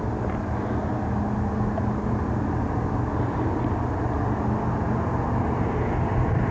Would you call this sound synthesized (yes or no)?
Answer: no